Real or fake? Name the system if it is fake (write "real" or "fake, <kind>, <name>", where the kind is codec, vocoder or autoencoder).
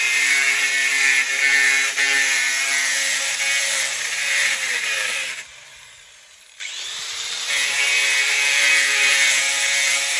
fake, vocoder, BigVGAN v2